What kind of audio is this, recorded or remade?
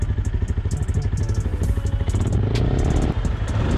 recorded